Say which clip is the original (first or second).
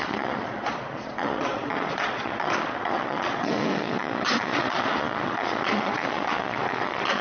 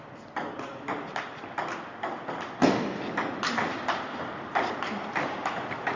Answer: second